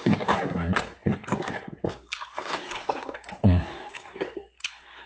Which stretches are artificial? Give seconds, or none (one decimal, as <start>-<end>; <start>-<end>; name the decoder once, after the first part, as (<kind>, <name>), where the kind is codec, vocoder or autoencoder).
0.0-5.1 (codec, SNAC)